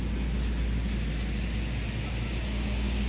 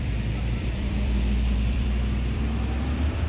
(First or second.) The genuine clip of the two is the first